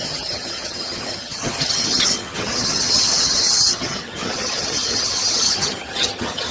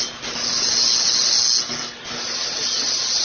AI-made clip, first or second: first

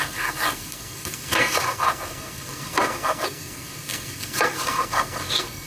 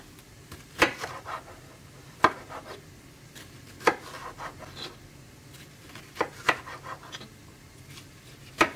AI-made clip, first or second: first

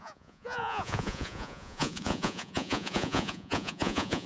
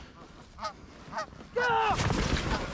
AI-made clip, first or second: first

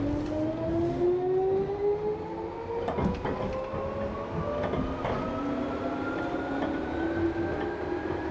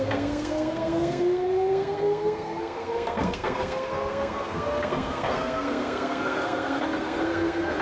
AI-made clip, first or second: second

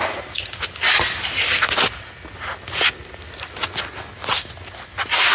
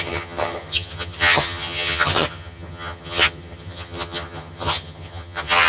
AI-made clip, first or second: second